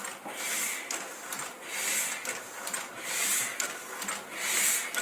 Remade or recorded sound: recorded